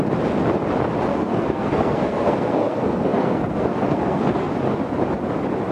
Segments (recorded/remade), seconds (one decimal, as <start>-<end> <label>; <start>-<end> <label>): 0.0-1.1 recorded; 1.1-4.5 remade; 4.5-5.7 recorded